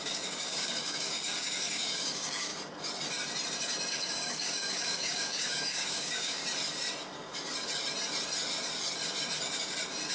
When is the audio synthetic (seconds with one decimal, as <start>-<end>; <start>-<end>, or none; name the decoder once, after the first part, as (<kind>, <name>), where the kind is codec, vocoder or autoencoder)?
0.0-2.5 (codec, DAC); 3.9-6.4